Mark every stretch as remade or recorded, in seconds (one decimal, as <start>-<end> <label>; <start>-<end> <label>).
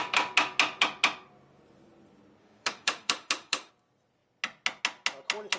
0.0-2.4 recorded; 2.4-3.7 remade; 3.7-5.6 recorded